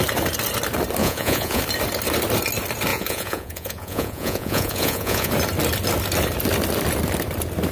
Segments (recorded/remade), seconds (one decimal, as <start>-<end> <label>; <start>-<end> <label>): 0.0-1.0 recorded; 1.0-1.6 remade; 1.6-2.9 recorded; 2.9-5.3 remade; 5.3-7.7 recorded